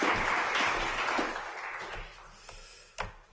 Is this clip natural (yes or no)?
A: yes